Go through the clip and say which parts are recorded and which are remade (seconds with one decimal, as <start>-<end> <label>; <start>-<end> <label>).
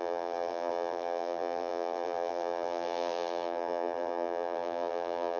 0.0-5.4 remade